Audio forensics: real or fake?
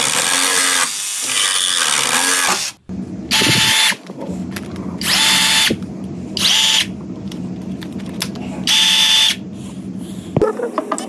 real